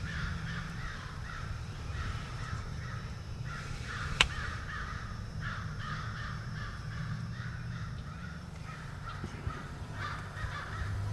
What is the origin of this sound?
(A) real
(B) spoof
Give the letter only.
B